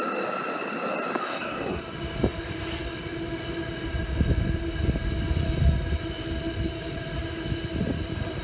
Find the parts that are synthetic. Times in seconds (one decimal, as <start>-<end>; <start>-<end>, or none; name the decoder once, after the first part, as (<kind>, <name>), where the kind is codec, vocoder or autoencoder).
1.2-1.8 (codec, SNAC)